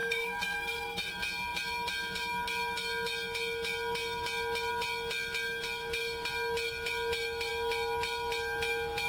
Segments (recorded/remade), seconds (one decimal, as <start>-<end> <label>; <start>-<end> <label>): 0.0-1.1 remade; 1.1-9.1 recorded